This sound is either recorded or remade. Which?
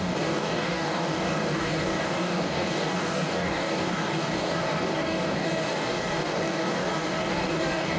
remade